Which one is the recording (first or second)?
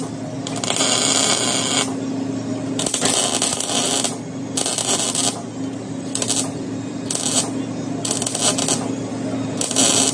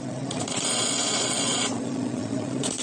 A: first